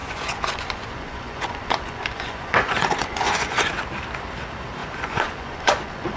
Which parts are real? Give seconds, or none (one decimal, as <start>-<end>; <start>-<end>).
3.7-4.8